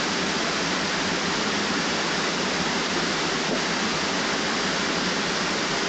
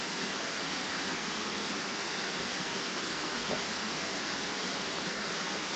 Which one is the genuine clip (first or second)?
first